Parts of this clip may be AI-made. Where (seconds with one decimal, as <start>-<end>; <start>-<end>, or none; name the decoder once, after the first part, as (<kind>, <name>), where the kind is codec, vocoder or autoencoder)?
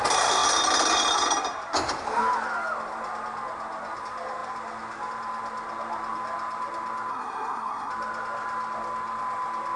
7.1-7.9 (codec, SNAC)